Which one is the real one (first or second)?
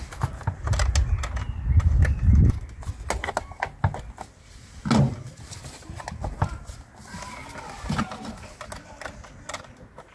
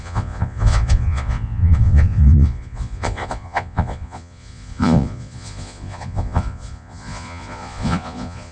first